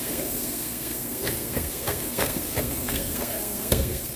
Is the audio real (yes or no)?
no